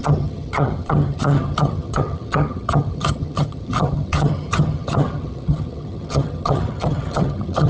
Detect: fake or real fake